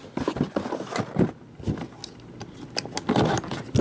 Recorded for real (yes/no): yes